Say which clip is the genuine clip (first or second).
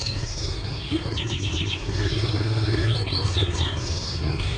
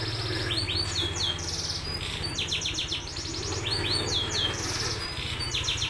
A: second